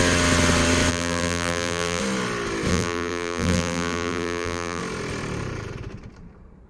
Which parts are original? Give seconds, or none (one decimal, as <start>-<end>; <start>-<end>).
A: 0.0-0.9; 2.0-2.7; 4.8-6.7

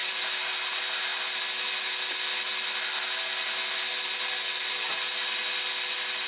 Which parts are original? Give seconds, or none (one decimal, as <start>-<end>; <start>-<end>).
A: 0.5-6.3

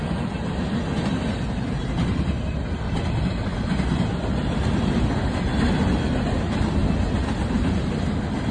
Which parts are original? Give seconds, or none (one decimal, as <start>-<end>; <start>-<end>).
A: 0.0-8.5

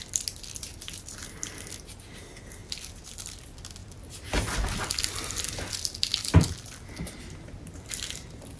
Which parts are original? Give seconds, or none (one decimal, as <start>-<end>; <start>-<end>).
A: 0.0-2.6; 3.4-8.6

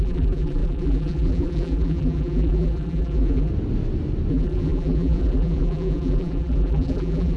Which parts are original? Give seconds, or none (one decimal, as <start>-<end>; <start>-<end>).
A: 3.5-4.3

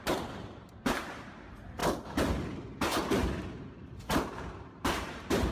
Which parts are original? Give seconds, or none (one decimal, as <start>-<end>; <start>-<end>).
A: 1.8-3.5